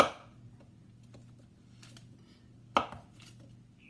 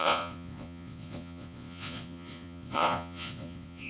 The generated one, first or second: second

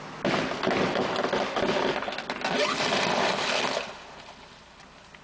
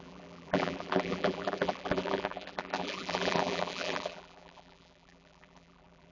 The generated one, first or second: second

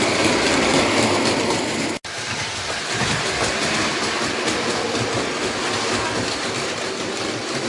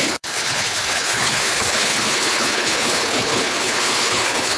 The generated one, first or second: second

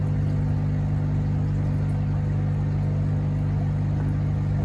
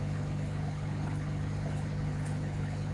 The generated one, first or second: second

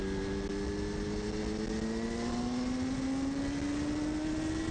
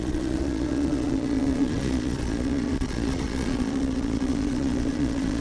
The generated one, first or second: second